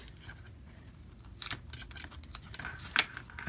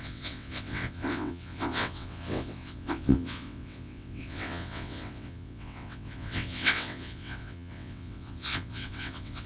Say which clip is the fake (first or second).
second